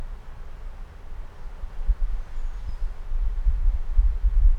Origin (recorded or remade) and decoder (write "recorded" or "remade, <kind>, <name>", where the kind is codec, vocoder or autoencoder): recorded